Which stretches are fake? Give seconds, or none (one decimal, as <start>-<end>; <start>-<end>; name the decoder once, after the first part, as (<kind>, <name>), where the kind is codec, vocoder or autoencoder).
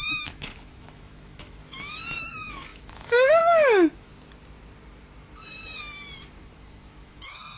0.0-1.6 (autoencoder, DAC-VAE); 2.2-4.1; 6.4-7.6